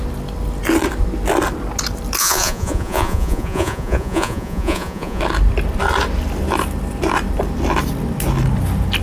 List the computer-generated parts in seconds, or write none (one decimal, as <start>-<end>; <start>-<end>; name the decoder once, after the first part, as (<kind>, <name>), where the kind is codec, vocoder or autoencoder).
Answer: 2.2-5.2 (vocoder, Vocos)